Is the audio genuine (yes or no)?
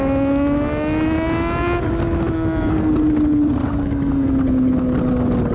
yes